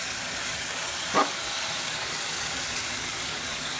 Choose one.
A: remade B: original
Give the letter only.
A